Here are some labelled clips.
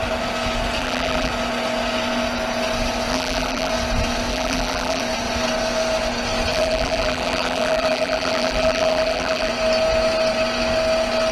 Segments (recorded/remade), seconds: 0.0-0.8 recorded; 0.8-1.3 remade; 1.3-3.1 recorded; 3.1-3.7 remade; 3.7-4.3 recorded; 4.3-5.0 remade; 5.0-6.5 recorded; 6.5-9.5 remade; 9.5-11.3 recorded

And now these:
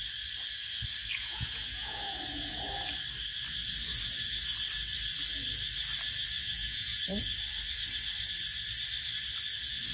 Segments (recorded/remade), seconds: 0.0-1.0 recorded; 1.0-2.7 remade; 2.7-6.4 recorded; 6.4-7.0 remade; 7.0-9.9 recorded

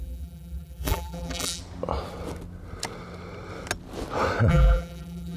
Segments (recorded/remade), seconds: 0.0-1.6 remade; 1.6-4.5 recorded; 4.5-5.4 remade